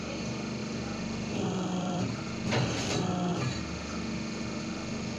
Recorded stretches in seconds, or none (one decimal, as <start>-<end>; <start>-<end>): 0.0-0.6; 2.0-5.2